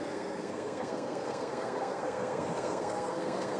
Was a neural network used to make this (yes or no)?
yes